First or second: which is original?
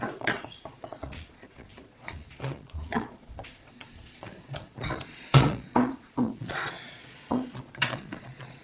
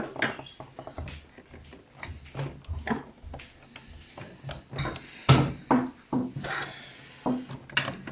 second